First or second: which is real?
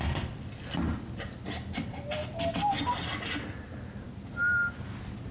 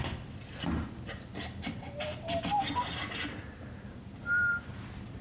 first